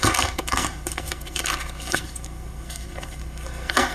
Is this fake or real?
fake